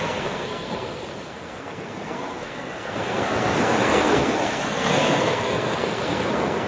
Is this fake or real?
fake